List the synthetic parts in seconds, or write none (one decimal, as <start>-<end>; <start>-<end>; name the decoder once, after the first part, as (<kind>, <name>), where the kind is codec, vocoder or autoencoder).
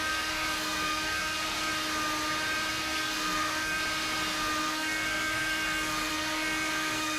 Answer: 0.0-1.7 (codec, SNAC); 2.7-3.8; 4.6-7.2